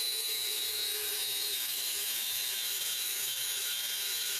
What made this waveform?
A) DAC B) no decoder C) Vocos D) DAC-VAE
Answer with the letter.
D